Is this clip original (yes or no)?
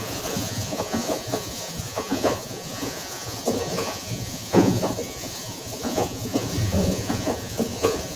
no